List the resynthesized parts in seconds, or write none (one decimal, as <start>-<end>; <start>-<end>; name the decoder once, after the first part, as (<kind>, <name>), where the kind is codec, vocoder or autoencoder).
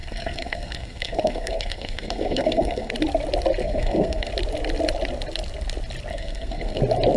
0.0-2.9 (codec, SNAC); 3.6-4.3; 6.1-6.8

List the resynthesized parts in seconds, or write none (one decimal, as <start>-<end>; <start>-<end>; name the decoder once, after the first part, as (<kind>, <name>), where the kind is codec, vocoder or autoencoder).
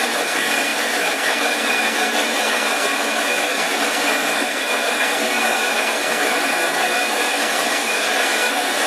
0.0-8.9 (codec, SNAC)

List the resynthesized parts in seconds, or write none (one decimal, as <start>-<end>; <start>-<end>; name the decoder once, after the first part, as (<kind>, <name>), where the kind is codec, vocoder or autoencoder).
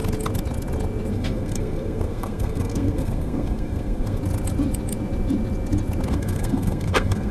1.1-4.2 (codec, SNAC); 6.1-7.3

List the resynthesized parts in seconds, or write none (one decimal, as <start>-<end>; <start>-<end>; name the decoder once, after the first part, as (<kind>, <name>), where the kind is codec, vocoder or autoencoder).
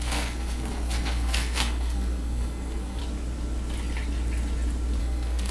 0.0-3.0 (codec, SNAC); 5.0-5.5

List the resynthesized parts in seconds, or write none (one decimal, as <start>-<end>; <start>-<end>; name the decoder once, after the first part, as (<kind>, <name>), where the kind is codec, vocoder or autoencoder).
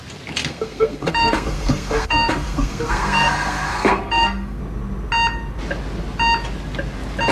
0.4-4.6 (codec, SNAC)